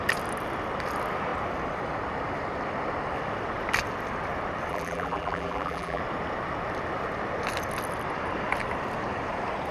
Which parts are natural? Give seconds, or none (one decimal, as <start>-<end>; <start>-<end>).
0.0-4.7; 6.0-9.7